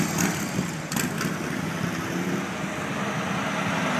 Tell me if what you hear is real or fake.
real